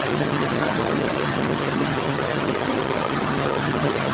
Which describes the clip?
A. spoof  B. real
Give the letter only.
A